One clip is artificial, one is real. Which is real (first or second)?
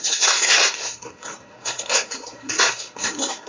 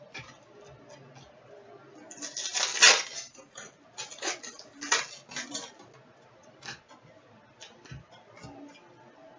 second